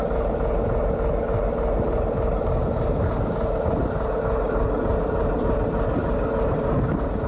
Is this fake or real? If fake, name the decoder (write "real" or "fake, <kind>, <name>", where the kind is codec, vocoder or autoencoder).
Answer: real